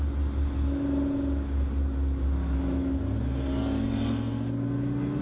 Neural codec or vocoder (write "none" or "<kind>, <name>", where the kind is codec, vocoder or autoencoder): none